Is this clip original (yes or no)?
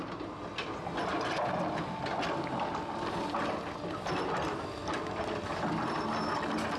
yes